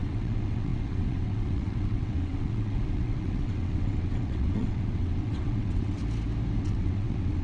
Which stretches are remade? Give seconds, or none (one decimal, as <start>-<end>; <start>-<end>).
0.0-6.0; 6.6-7.4